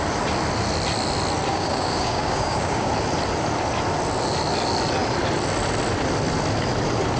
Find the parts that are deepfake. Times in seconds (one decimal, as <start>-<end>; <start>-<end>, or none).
1.5-2.9